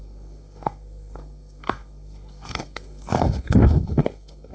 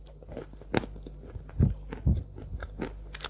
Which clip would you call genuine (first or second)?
second